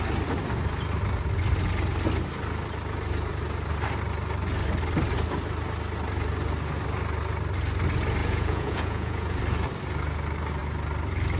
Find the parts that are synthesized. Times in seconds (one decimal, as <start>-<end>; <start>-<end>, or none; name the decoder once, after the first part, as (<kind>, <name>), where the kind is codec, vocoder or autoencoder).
8.2-9.4 (vocoder, Vocos)